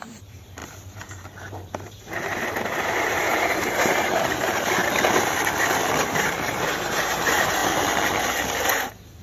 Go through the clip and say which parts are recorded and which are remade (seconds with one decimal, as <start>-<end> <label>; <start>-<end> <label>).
0.0-4.8 remade; 4.8-6.0 recorded; 6.0-7.6 remade; 7.6-8.7 recorded; 8.7-9.2 remade